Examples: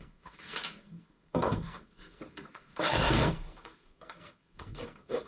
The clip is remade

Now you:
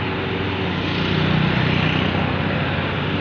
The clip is recorded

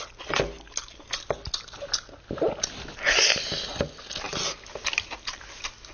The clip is recorded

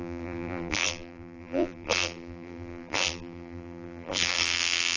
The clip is remade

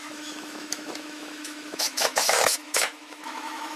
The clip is remade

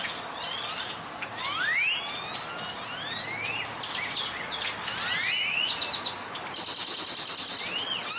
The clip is recorded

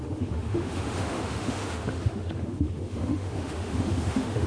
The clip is remade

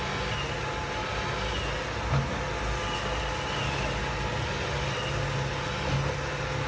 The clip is recorded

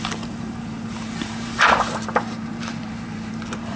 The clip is remade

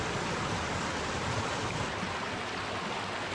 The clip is recorded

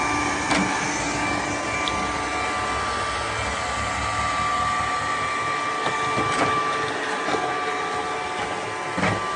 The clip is recorded